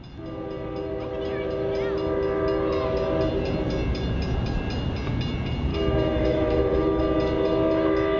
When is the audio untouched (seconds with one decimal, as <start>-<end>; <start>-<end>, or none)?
0.0-5.7; 7.0-8.2